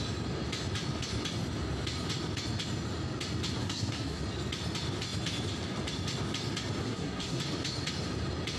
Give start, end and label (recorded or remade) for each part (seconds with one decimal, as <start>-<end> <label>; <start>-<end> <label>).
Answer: 0.0-3.6 recorded; 3.6-4.2 remade; 4.2-6.8 recorded; 6.8-7.4 remade; 7.4-8.6 recorded

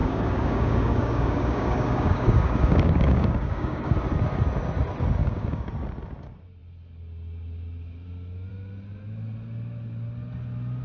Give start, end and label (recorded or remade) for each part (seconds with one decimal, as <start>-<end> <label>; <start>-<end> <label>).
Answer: 0.0-3.9 remade; 3.9-5.2 recorded; 5.2-5.7 remade; 5.7-10.8 recorded

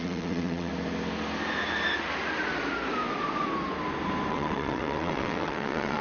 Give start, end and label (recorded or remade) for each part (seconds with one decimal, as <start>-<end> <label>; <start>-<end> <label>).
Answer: 0.0-0.7 remade; 0.7-4.3 recorded; 4.3-6.0 remade

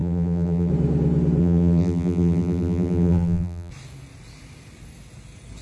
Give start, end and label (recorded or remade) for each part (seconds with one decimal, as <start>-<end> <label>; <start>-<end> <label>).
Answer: 0.0-0.7 remade; 0.7-1.4 recorded; 1.4-3.7 remade; 3.7-5.6 recorded

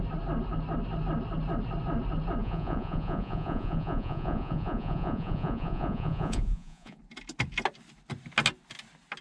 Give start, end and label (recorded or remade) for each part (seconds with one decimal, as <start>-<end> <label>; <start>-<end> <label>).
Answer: 0.0-2.4 recorded; 2.4-7.0 remade; 7.0-9.2 recorded

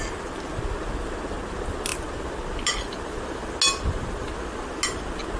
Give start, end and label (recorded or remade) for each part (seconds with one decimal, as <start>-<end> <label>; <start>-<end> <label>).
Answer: 0.0-5.4 recorded

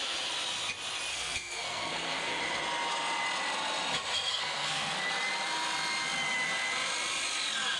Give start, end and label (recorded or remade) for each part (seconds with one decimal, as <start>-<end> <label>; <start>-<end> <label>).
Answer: 0.0-1.1 recorded; 1.1-2.4 remade; 2.4-4.3 recorded; 4.3-5.0 remade; 5.0-7.8 recorded

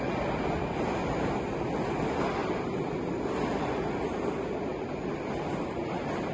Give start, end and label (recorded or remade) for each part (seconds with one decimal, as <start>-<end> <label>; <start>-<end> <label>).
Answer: 0.0-2.4 recorded; 2.4-3.1 remade; 3.1-4.7 recorded; 4.7-6.3 remade